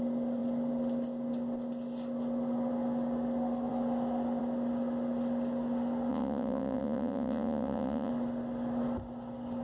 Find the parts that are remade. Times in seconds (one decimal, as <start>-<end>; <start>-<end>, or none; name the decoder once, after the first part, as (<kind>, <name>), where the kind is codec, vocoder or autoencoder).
6.1-8.1 (vocoder, Vocos)

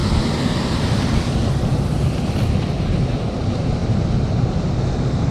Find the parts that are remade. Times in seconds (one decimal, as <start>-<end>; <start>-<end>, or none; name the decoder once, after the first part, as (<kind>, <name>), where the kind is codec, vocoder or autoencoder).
none

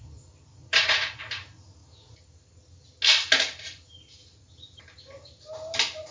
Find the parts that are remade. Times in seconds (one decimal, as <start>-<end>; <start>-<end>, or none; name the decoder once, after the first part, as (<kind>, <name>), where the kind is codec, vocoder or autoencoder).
0.6-1.2 (vocoder, Vocos)